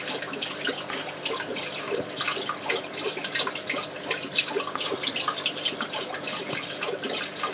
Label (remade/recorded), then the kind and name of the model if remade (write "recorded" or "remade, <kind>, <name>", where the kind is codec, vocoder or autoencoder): recorded